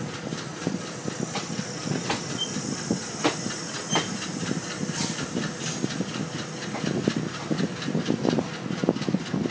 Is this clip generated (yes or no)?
no